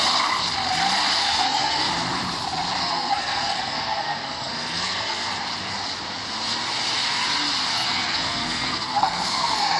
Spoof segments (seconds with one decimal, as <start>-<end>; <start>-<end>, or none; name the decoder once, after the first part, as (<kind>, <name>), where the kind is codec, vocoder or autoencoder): 1.2-1.9 (codec, SNAC); 2.8-5.3; 7.7-9.8